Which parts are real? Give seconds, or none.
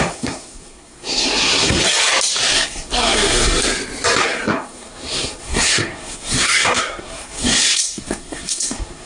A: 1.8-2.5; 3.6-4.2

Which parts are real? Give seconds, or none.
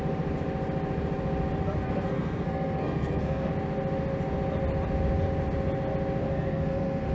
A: 0.0-1.8; 3.5-6.2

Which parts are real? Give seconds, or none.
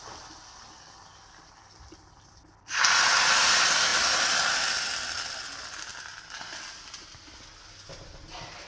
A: 0.0-8.7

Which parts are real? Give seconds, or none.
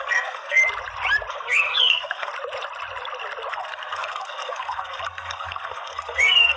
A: 0.6-1.3; 2.3-3.5